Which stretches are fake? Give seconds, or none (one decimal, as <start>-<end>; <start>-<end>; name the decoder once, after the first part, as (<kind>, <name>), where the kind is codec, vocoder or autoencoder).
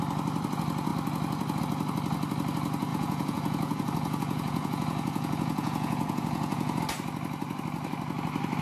2.9-6.8 (vocoder, Vocos)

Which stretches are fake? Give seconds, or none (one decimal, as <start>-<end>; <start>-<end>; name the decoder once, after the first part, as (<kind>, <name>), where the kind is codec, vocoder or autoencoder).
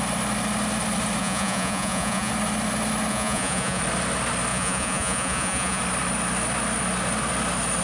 1.2-2.3 (vocoder, Vocos); 3.1-3.8; 4.5-5.8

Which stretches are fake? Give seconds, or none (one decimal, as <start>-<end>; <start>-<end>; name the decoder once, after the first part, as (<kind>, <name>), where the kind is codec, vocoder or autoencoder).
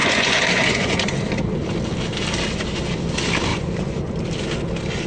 0.0-1.2 (vocoder, Vocos); 3.5-4.1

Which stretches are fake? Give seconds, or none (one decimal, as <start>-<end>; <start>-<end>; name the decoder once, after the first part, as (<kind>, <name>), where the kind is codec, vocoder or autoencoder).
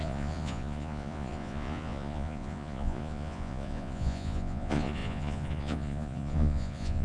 0.0-7.0 (vocoder, Vocos)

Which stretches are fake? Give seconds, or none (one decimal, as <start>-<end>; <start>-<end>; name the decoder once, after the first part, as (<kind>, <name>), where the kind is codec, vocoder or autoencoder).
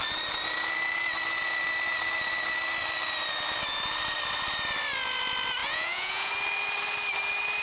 5.6-6.3 (vocoder, Vocos)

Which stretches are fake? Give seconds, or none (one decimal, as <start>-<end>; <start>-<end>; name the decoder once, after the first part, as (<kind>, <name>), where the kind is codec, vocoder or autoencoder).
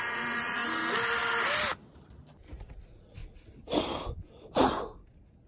0.0-0.6 (vocoder, Vocos); 2.5-3.2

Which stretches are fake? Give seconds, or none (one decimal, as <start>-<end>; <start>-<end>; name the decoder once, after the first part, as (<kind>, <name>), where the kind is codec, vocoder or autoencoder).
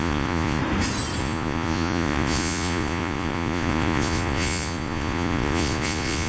0.0-0.6 (vocoder, Vocos); 1.2-6.3